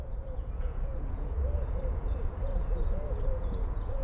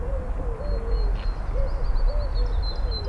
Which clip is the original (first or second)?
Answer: second